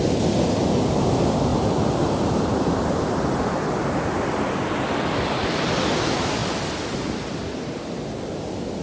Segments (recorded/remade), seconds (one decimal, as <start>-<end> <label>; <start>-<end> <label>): 0.0-1.5 recorded; 1.5-3.1 remade; 3.1-8.8 recorded